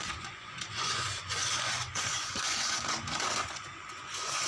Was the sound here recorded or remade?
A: remade